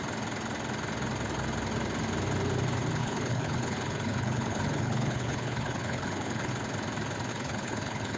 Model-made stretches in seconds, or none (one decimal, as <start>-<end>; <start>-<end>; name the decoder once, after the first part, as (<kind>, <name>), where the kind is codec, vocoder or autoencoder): 3.0-6.5 (codec, HILCodec); 7.3-8.2